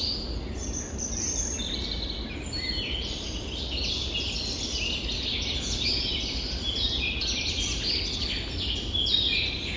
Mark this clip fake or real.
real